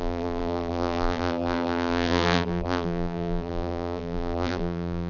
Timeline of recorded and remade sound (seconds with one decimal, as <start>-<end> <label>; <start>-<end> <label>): 0.0-5.1 remade